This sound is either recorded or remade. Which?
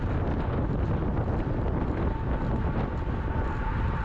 recorded